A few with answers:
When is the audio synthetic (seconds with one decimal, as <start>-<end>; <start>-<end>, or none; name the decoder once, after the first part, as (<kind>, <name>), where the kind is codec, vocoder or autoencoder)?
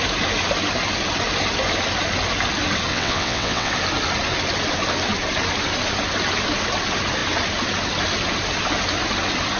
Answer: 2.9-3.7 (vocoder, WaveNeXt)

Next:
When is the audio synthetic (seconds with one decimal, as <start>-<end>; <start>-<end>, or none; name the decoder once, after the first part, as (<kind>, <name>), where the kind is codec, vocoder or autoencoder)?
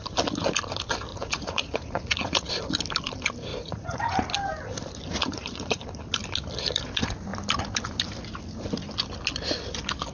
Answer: 1.1-2.5 (vocoder, Vocos); 3.5-4.2; 5.2-5.8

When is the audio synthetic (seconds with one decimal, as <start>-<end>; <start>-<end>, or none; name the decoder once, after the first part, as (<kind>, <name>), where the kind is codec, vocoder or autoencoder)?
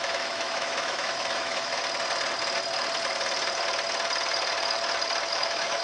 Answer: 0.0-1.8 (autoencoder, DAC-VAE); 5.3-5.8